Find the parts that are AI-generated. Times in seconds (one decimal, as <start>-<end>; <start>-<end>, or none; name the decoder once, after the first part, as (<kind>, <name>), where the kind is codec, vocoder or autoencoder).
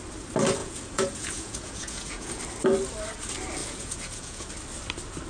0.6-2.4 (vocoder, Vocos); 3.6-4.5